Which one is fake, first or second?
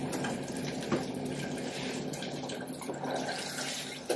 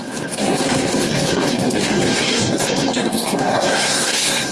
second